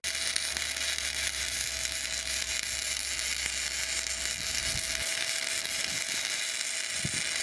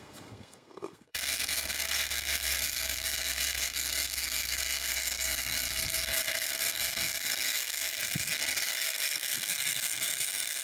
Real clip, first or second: first